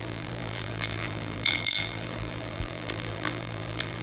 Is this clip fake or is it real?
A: fake